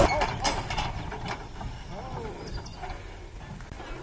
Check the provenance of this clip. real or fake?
real